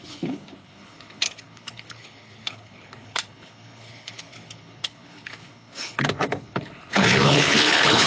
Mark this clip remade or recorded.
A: remade